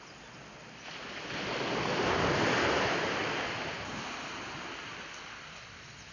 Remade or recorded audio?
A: recorded